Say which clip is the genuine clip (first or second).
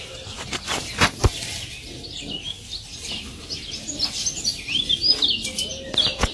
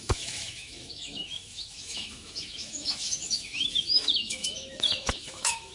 first